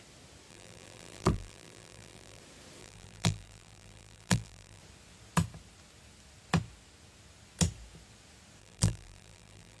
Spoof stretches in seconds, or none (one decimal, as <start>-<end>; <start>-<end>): 0.5-2.4; 2.8-4.8; 8.6-9.8

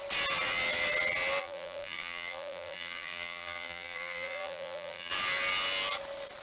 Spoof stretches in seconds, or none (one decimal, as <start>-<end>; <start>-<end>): 1.4-5.1

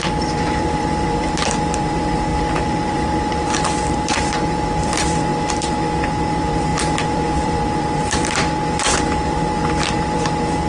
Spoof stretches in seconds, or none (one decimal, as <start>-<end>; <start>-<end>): 0.0-2.3; 2.9-5.3; 6.3-10.7

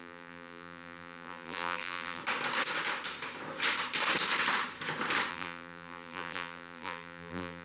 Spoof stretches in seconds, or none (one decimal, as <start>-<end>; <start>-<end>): 0.0-2.2; 5.3-7.6

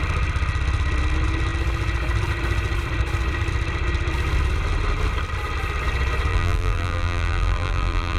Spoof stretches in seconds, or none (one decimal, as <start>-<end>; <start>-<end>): 6.3-8.2

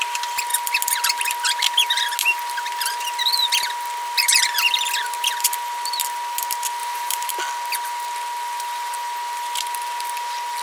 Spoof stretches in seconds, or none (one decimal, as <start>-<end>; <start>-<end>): 6.8-7.3

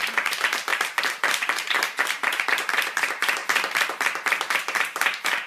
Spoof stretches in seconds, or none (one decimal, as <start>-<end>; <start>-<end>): 0.0-3.4; 4.4-5.5